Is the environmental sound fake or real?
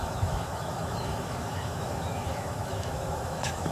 fake